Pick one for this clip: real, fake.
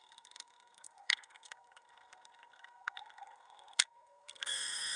fake